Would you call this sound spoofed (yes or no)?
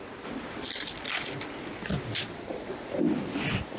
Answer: yes